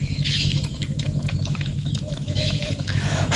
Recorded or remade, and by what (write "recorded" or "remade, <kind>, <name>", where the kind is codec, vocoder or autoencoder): remade, autoencoder, DAC-VAE